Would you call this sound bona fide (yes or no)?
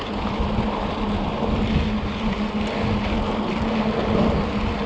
yes